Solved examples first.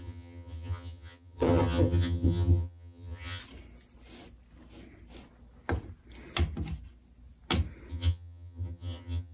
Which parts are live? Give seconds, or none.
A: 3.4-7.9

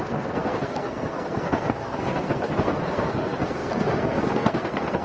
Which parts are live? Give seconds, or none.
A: none

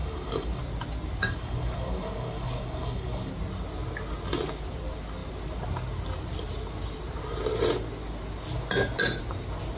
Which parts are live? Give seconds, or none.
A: 0.6-1.2; 3.3-9.8

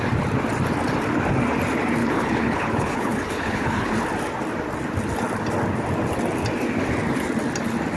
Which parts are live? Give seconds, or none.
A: 0.0-2.0; 3.9-8.0

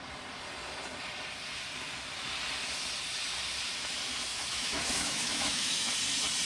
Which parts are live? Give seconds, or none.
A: 0.0-4.3; 5.9-6.4

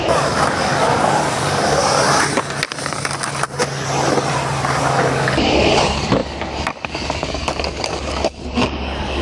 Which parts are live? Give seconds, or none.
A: 1.8-4.8